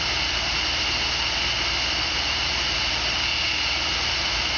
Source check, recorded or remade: recorded